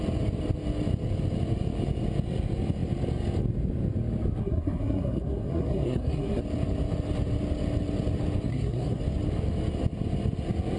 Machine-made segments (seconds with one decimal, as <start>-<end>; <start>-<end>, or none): 4.4-6.4; 8.5-9.0